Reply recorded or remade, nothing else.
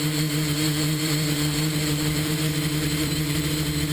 remade